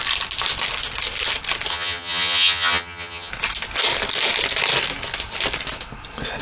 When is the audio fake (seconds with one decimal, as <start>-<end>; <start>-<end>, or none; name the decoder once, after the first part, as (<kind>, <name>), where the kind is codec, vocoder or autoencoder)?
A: 1.7-3.3 (vocoder, HiFi-GAN)